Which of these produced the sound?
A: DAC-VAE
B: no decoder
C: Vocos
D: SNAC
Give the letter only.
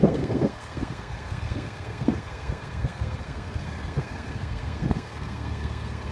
D